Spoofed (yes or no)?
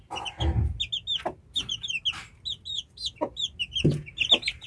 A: no